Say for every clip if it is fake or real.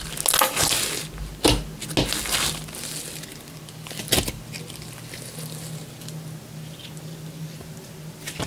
real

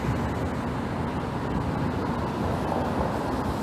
real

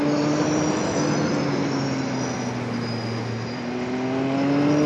real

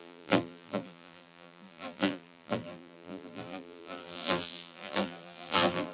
fake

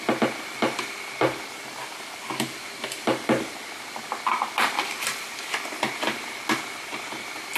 real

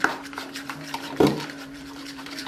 fake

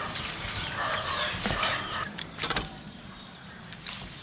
fake